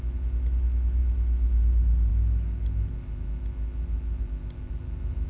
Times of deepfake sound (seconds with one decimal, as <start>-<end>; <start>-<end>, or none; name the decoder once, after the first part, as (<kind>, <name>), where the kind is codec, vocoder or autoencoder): none

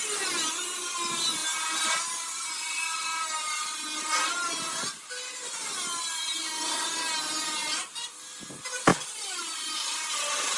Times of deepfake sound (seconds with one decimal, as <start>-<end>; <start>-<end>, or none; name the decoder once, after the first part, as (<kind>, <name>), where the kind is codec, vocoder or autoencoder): none